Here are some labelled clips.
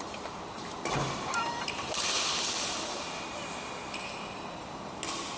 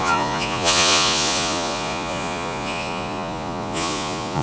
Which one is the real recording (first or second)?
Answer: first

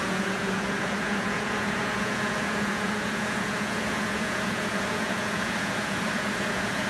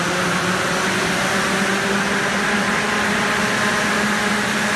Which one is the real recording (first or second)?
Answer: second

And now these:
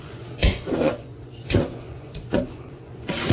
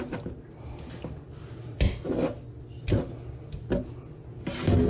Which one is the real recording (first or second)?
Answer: second